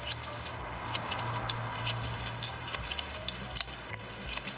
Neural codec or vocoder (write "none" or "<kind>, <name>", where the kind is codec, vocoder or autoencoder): none